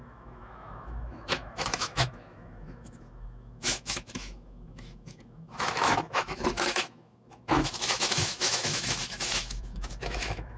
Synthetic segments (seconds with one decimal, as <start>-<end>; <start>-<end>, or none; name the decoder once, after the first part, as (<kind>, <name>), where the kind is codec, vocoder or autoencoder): 0.0-10.6 (autoencoder, DAC-VAE)